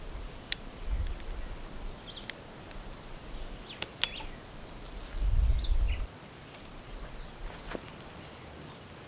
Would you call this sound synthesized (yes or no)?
no